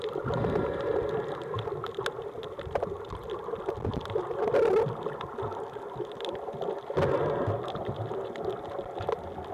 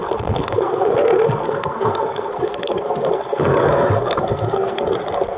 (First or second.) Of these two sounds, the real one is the first